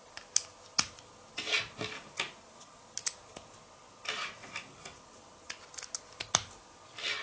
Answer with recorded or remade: recorded